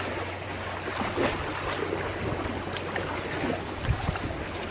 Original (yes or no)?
yes